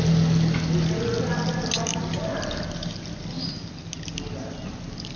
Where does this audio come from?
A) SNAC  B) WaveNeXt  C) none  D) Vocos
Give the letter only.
C